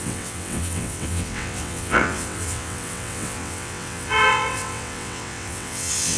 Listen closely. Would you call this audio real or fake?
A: fake